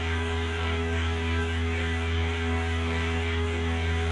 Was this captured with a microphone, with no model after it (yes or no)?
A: no